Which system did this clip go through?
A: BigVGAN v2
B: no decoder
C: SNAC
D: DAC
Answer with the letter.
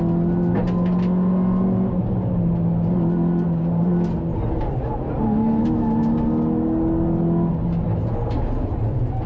B